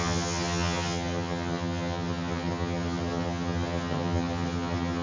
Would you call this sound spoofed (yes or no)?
yes